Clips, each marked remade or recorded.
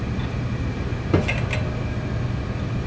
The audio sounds recorded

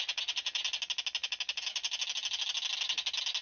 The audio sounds recorded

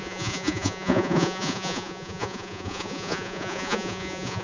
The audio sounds remade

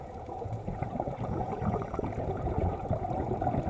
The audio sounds remade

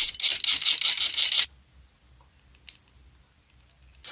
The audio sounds recorded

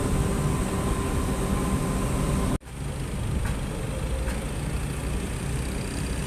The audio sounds recorded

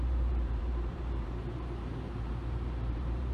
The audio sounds remade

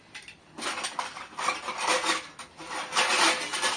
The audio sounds recorded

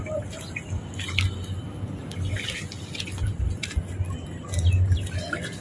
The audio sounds recorded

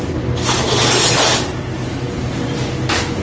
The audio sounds recorded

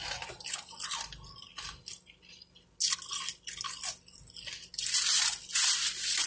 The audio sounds recorded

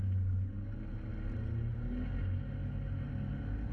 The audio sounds recorded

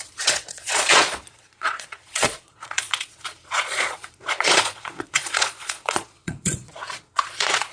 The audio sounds remade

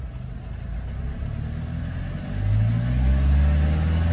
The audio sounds recorded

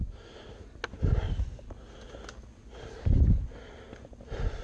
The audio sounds recorded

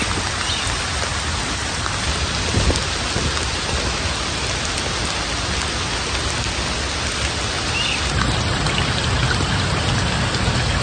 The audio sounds recorded